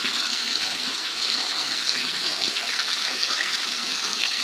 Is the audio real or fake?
fake